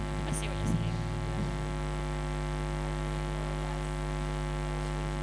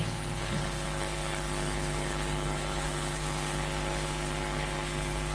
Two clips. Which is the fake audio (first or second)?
second